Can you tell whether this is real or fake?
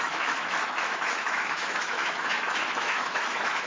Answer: fake